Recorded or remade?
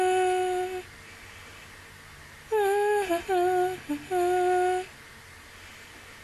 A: recorded